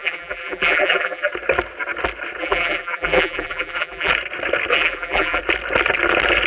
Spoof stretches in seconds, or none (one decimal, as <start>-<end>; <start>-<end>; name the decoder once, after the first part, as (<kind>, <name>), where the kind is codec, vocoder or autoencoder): 0.0-1.3 (vocoder, BigVGAN v2); 2.4-4.1; 4.7-5.4